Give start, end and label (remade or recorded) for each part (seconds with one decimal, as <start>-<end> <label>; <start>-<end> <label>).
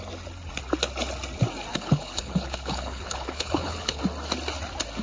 0.0-1.7 recorded; 1.7-4.0 remade; 4.0-5.0 recorded